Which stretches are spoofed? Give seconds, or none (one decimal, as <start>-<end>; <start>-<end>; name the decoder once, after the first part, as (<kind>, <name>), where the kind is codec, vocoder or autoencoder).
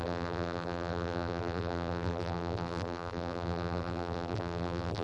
0.0-5.0 (vocoder, BigVGAN v2)